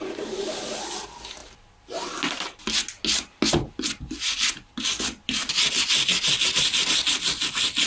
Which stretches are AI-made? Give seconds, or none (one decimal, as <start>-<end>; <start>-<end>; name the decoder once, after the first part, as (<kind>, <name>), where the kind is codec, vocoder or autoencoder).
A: none